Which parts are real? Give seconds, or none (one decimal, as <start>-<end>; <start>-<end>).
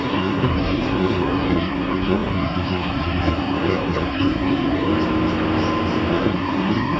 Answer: 4.9-6.1